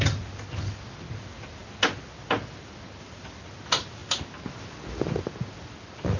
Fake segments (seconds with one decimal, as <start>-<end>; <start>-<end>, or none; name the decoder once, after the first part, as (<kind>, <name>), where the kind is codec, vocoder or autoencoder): none